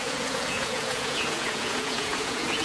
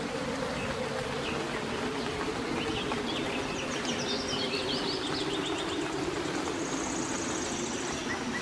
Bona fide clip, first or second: second